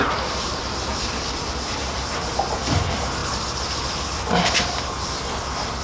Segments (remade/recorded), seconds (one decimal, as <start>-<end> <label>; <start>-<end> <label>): 0.0-0.9 recorded; 0.9-2.1 remade; 2.1-5.8 recorded